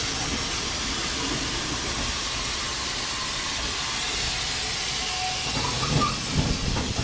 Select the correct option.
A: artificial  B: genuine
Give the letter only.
B